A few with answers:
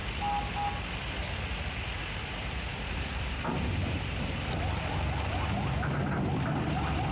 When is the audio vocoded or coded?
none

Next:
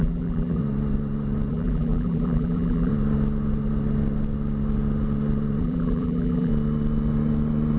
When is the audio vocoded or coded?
0.0-0.6 (vocoder, BigVGAN v2); 1.5-2.9; 5.6-6.5

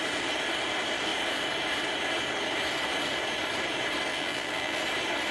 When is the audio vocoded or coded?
4.1-4.8 (vocoder, BigVGAN v2)

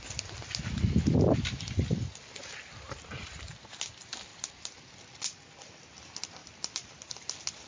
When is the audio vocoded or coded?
none

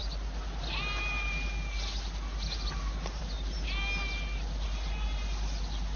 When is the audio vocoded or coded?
none

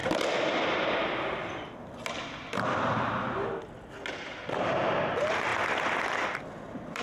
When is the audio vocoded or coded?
4.2-5.5 (vocoder, BigVGAN v2); 6.6-7.0

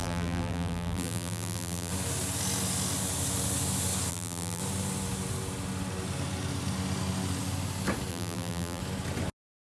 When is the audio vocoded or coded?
0.0-1.9 (vocoder, BigVGAN v2); 4.1-4.6; 8.1-8.8

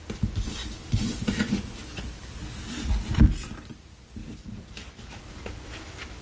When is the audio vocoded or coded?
4.2-5.2 (vocoder, BigVGAN v2)